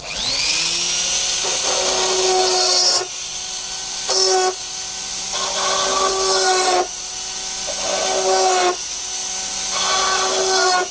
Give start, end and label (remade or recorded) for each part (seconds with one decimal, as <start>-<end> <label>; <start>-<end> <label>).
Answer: 0.0-10.9 recorded